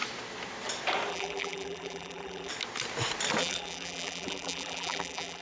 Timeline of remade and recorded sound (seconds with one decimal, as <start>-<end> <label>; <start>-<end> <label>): 0.0-1.1 recorded; 1.1-2.5 remade; 2.5-3.4 recorded; 3.4-5.4 remade